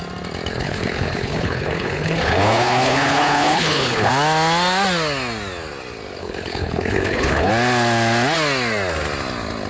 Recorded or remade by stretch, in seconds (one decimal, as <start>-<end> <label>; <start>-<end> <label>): 0.0-0.5 recorded; 0.5-4.1 remade; 4.1-6.2 recorded; 6.2-7.5 remade; 7.5-9.7 recorded